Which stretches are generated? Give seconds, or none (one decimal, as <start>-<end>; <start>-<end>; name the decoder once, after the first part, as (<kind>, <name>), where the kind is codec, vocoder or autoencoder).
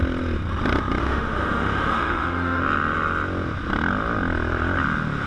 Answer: 1.0-2.6 (autoencoder, DAC-VAE)